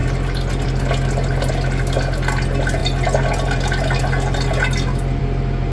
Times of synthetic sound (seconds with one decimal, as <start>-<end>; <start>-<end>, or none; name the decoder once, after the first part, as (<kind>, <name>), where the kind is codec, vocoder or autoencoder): none